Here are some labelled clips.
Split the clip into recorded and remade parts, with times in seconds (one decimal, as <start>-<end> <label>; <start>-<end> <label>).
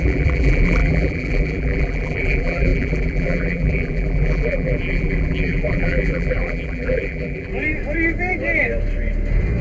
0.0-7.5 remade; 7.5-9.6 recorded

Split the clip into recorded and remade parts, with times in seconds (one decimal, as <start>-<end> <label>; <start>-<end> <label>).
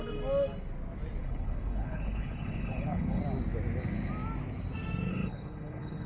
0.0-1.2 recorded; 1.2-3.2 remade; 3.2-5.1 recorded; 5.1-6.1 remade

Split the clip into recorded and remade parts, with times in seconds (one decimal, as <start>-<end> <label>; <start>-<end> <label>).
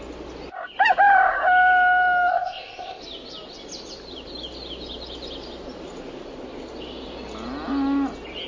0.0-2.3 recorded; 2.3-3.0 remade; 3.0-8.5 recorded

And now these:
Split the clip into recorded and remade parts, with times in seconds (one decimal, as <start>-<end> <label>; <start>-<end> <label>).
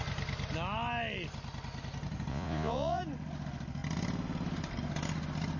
0.0-2.3 recorded; 2.3-3.0 remade; 3.0-5.6 recorded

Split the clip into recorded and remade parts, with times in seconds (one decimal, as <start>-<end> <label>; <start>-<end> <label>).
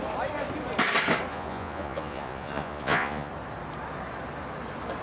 0.0-1.3 recorded; 1.3-3.3 remade; 3.3-5.0 recorded